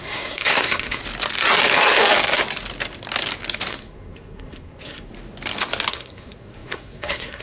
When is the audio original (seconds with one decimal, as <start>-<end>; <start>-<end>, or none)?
1.0-3.7; 5.1-5.9